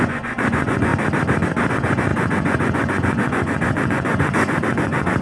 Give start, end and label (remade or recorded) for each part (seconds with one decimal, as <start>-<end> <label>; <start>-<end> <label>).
0.0-0.9 remade; 0.9-1.7 recorded; 1.7-5.2 remade